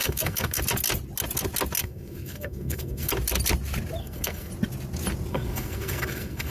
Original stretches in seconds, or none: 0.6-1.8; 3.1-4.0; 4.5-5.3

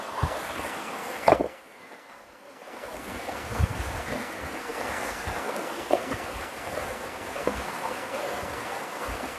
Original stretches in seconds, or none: none

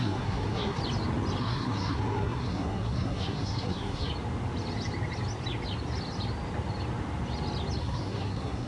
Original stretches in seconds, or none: 0.8-1.4; 4.1-7.8

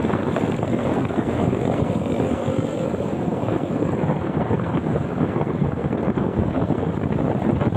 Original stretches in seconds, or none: 6.9-7.8

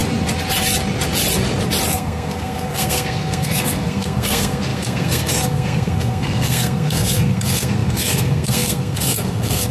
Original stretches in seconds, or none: 0.0-1.9